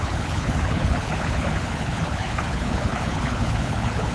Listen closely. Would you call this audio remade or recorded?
remade